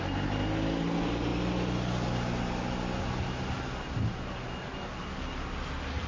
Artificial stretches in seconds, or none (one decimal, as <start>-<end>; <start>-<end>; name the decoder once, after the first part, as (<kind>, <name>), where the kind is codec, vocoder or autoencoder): none